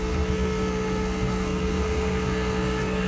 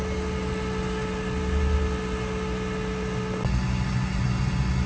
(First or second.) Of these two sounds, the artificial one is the first